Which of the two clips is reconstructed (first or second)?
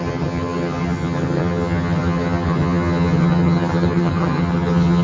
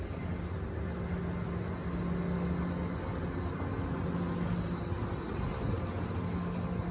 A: first